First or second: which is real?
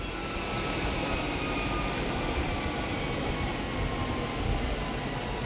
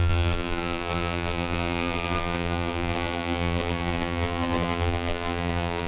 first